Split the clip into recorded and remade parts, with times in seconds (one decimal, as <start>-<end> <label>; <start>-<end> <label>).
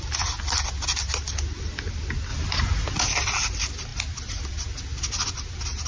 0.0-5.9 recorded